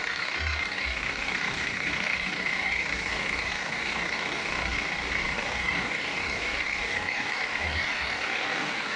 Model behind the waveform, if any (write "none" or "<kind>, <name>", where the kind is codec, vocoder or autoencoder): codec, DAC